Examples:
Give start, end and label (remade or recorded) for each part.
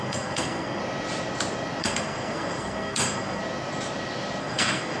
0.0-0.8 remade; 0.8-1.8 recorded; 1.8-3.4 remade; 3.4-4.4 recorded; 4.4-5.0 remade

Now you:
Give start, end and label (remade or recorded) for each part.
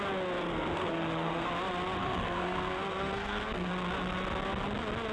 0.0-0.4 recorded; 0.4-1.5 remade; 1.5-2.0 recorded; 2.0-3.7 remade; 3.7-5.1 recorded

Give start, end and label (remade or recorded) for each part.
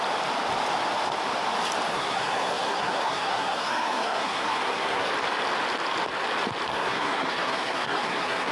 0.0-1.9 recorded; 1.9-5.1 remade; 5.1-6.7 recorded; 6.7-8.5 remade